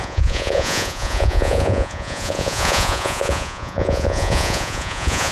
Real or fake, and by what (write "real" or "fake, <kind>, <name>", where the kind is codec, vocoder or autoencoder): fake, vocoder, Vocos